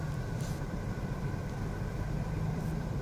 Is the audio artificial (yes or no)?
yes